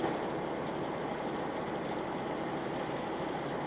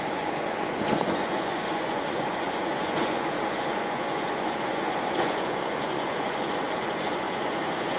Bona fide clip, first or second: first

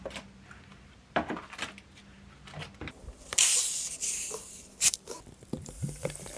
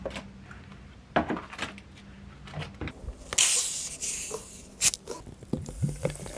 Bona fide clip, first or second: second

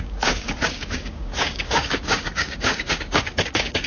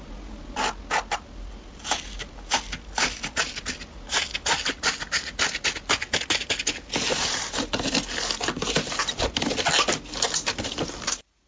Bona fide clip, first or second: second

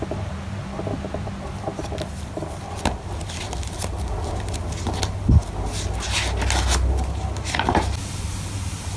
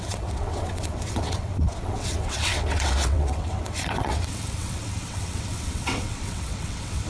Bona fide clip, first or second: first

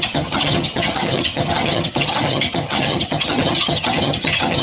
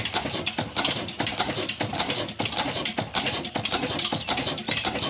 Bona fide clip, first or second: second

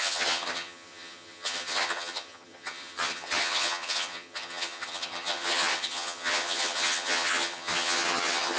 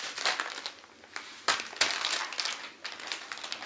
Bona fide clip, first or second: second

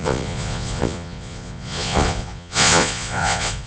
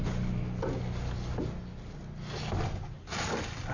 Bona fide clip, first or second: second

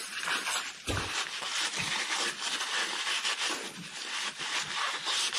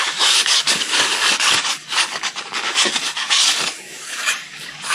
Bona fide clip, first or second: first